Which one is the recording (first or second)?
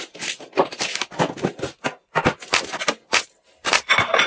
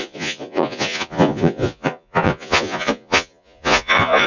first